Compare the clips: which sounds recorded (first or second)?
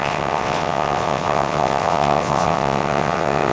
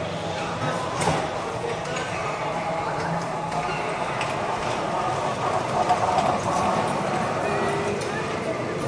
second